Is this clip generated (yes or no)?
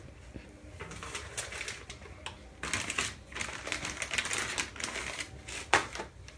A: no